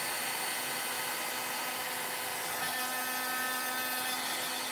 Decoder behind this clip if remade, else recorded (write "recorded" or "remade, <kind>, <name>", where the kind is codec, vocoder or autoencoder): recorded